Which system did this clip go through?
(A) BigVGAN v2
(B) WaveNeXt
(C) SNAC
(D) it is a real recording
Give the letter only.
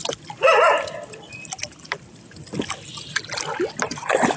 D